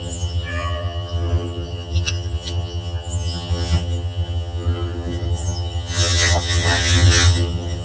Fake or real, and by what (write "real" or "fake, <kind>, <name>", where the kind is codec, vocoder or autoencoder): fake, vocoder, HiFi-GAN